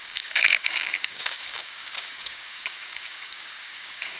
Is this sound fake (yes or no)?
yes